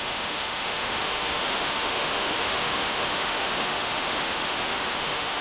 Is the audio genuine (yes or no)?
no